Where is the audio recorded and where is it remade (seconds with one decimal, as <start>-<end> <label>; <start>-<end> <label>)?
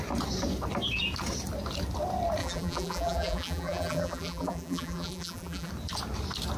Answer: 0.0-2.4 recorded; 2.4-5.7 remade; 5.7-6.6 recorded